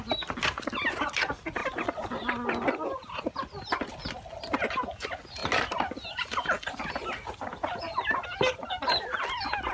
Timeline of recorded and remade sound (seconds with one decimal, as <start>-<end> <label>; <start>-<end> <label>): 0.0-9.7 recorded